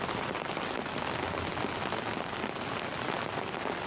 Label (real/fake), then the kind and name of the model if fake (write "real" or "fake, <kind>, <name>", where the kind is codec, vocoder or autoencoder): real